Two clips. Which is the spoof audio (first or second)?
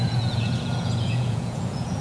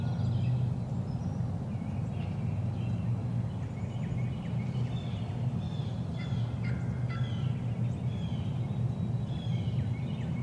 first